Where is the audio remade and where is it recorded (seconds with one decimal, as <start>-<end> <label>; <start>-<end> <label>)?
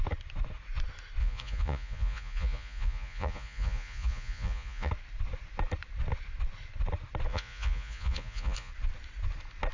0.0-1.2 recorded; 1.2-4.9 remade; 4.9-7.3 recorded; 7.3-8.7 remade; 8.7-9.7 recorded